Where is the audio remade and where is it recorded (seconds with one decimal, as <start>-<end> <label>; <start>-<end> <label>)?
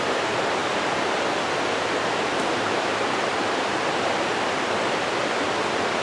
0.0-6.0 recorded